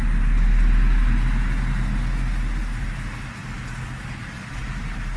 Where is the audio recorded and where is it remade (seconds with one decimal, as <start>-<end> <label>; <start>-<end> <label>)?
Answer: 0.0-5.2 recorded